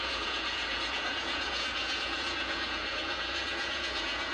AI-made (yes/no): yes